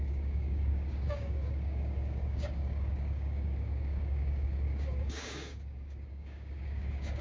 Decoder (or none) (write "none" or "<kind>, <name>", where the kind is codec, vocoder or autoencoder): codec, DAC